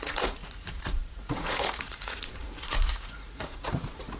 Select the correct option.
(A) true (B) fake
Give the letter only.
B